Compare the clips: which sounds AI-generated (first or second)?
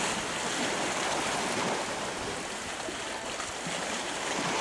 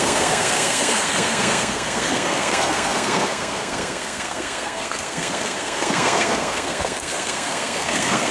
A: second